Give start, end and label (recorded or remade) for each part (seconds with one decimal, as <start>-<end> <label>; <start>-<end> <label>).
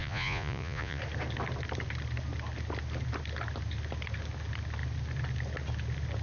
0.0-1.0 remade; 1.0-6.2 recorded